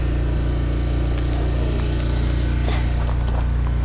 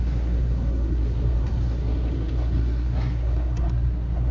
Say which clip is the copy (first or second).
second